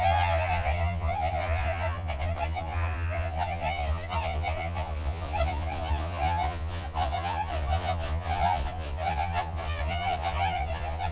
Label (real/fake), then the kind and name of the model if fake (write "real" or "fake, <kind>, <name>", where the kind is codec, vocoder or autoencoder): fake, vocoder, Vocos